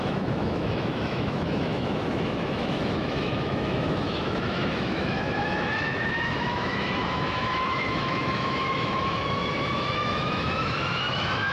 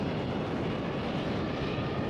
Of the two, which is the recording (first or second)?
second